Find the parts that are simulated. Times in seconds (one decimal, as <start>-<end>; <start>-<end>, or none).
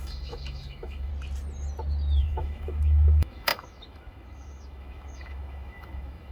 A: 0.0-1.1; 2.2-6.3